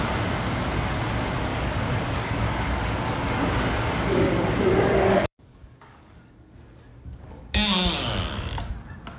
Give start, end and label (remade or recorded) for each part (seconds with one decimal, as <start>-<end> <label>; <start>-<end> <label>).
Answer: 0.0-1.5 recorded; 1.5-6.3 remade; 6.3-6.9 recorded; 6.9-8.7 remade; 8.7-9.2 recorded

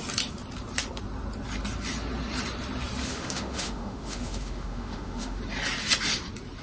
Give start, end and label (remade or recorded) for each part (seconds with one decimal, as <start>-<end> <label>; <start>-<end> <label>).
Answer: 0.0-3.0 recorded; 3.0-5.4 remade; 5.4-6.6 recorded

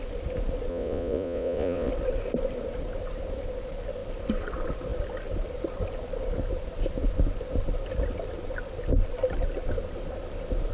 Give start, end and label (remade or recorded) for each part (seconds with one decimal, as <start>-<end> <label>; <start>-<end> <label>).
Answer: 0.0-0.7 recorded; 0.7-1.9 remade; 1.9-10.7 recorded

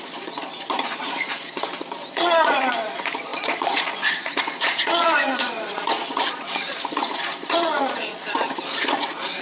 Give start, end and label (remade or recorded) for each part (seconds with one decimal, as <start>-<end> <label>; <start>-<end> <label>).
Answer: 0.0-9.4 remade